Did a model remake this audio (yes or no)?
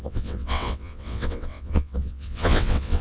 yes